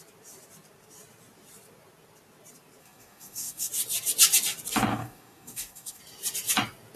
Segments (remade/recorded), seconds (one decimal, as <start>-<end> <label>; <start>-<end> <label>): 0.0-2.8 recorded; 2.8-3.7 remade; 3.7-4.9 recorded; 4.9-6.0 remade; 6.0-7.0 recorded